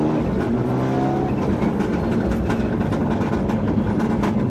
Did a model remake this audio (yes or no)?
no